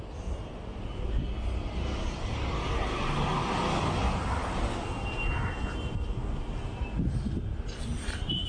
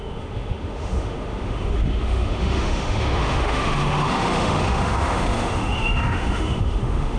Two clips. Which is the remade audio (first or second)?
second